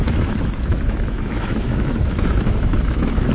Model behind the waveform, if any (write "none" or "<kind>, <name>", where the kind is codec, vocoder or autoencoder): autoencoder, DAC-VAE